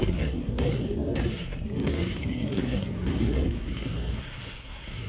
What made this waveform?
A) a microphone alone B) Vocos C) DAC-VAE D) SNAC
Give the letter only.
D